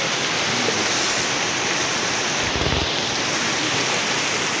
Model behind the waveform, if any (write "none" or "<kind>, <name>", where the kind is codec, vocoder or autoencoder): none